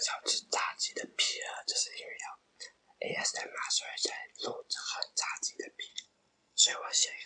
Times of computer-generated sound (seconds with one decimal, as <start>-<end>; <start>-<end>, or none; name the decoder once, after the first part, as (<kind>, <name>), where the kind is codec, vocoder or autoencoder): 5.9-7.3 (codec, SNAC)